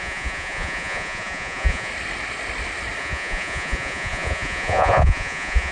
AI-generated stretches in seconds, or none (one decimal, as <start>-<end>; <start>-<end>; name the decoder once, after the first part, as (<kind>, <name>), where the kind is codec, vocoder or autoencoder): 0.0-1.9 (vocoder, Vocos); 3.0-5.7